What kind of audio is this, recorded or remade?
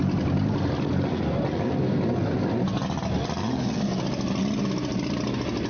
recorded